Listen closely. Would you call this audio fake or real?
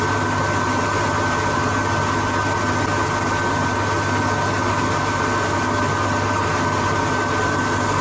real